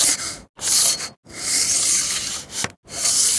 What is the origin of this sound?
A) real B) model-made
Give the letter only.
A